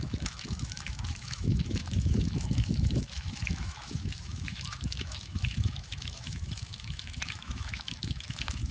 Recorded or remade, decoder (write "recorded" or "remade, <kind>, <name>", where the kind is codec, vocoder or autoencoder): remade, autoencoder, DAC-VAE